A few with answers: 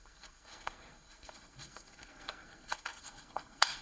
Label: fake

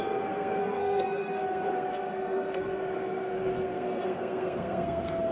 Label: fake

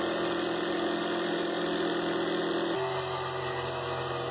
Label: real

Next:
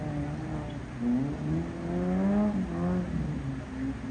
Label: real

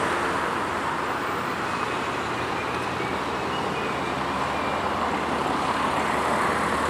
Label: real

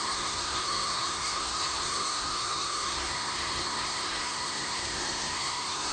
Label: fake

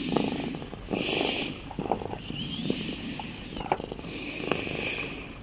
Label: real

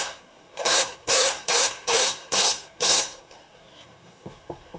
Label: fake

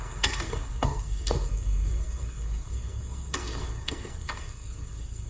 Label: fake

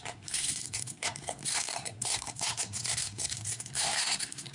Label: fake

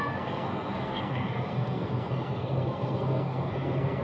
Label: fake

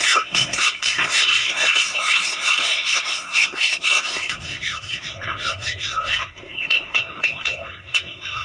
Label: fake